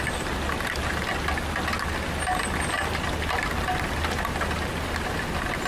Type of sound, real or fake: real